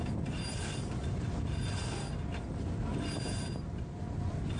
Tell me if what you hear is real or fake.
real